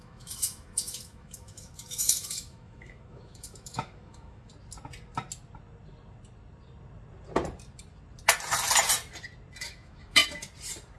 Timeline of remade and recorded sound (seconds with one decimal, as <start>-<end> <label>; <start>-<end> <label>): 0.0-4.5 remade; 4.5-9.6 recorded; 9.6-10.2 remade; 10.2-11.0 recorded